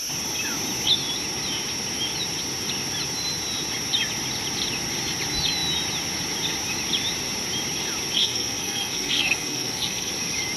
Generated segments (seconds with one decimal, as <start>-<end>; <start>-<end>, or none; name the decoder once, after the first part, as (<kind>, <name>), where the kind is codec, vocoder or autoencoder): 8.2-10.1 (codec, SNAC)